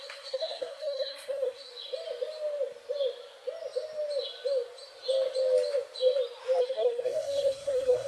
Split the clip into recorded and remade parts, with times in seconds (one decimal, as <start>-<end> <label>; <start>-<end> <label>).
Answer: 0.0-1.7 remade; 1.7-6.6 recorded; 6.6-8.1 remade